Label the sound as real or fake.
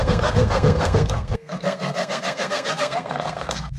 fake